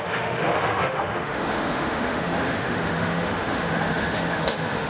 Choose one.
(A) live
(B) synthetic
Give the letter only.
B